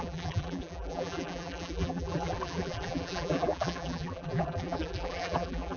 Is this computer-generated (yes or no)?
yes